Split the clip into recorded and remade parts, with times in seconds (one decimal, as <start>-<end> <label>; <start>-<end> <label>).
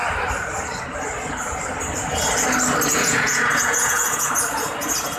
0.0-2.9 recorded; 2.9-4.3 remade; 4.3-5.2 recorded